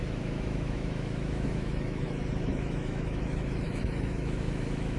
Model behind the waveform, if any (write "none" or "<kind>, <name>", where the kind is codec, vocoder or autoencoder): autoencoder, DAC-VAE